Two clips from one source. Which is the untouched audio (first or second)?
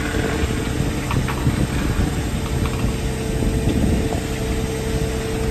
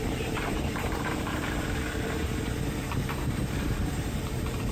first